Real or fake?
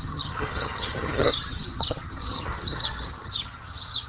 fake